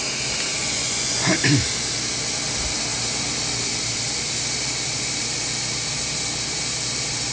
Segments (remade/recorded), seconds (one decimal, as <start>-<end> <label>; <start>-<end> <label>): 0.0-0.6 recorded; 0.6-1.3 remade; 1.3-7.3 recorded